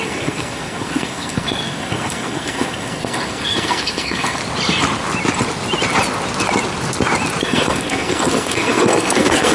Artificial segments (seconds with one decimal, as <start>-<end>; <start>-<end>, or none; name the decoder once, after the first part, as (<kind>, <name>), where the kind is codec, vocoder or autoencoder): 0.0-4.4 (codec, SNAC); 7.4-9.5